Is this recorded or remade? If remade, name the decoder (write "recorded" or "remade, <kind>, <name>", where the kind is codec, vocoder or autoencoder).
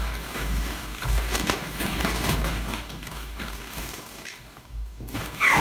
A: remade, codec, DAC